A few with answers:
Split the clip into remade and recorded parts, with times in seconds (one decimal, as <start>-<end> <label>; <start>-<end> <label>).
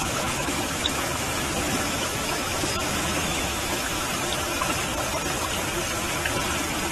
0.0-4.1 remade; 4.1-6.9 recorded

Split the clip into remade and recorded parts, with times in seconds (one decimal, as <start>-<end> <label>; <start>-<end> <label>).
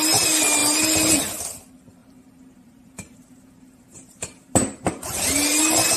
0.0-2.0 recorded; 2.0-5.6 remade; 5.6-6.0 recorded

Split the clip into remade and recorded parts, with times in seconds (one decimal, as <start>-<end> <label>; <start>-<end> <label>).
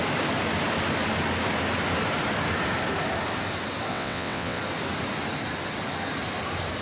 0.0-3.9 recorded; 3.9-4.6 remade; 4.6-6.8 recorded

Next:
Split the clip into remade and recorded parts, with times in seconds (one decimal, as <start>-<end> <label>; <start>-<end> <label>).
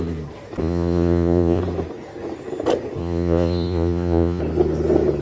0.0-0.6 recorded; 0.6-1.6 remade; 1.6-3.0 recorded; 3.0-4.4 remade; 4.4-5.2 recorded